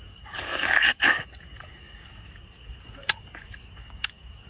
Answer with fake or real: fake